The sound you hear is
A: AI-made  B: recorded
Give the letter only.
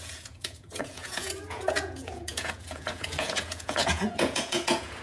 A